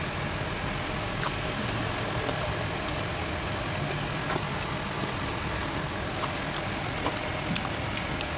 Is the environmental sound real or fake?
real